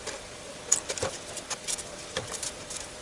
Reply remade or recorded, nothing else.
remade